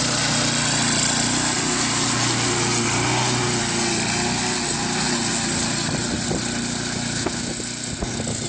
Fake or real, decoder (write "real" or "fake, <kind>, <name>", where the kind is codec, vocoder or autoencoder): real